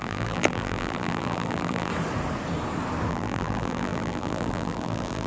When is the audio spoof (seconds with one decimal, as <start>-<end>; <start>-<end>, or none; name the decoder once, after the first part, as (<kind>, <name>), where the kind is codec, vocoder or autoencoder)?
0.0-1.9 (vocoder, BigVGAN v2); 3.1-5.3